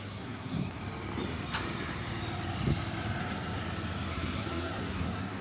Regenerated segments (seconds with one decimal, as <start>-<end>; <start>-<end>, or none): 0.0-0.8; 3.2-3.6; 4.1-5.4